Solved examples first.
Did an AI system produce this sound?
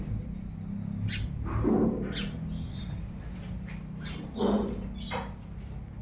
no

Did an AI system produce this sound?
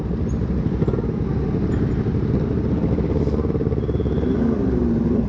no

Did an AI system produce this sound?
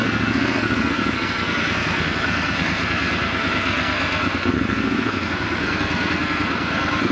yes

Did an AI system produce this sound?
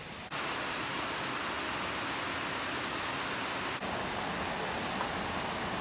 no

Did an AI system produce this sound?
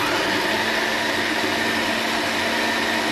no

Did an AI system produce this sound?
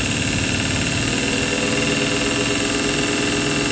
no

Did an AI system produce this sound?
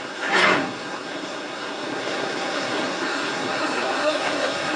yes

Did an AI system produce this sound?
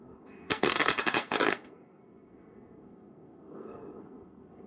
yes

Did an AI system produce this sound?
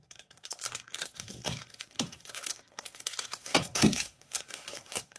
yes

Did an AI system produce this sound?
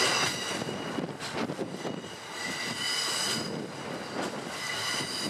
no